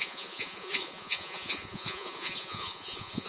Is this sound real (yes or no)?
no